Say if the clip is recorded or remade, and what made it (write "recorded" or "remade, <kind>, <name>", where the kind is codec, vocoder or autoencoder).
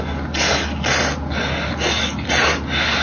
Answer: recorded